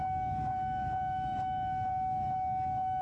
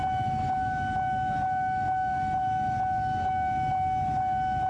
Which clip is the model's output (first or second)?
first